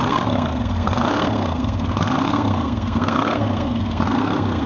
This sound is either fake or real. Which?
fake